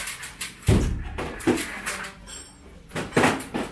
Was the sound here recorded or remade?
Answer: recorded